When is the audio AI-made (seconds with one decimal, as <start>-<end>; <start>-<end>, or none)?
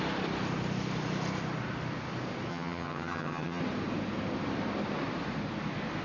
2.5-3.6